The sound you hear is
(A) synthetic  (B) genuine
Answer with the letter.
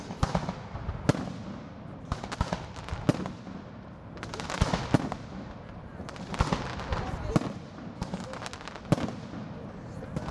B